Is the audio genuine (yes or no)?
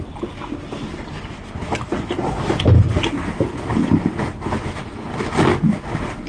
yes